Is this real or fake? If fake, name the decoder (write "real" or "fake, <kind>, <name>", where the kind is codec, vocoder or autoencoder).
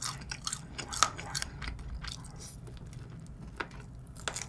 real